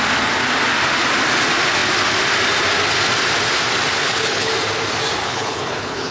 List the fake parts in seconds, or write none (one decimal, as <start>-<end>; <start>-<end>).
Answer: 4.0-4.5; 5.2-6.1